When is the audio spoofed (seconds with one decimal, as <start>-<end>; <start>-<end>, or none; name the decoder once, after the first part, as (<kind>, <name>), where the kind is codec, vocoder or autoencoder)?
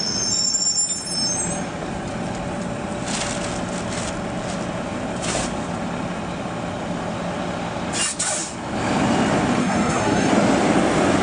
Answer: 9.6-10.3 (codec, SNAC)